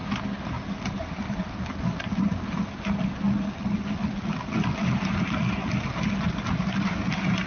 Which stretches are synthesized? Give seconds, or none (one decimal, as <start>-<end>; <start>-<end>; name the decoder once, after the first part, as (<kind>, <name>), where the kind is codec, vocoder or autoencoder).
none